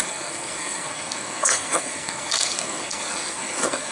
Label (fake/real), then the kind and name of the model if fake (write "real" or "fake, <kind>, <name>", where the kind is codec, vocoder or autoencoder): fake, codec, SNAC